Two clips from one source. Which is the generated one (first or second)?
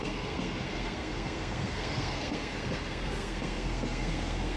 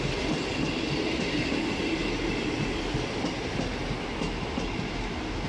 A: first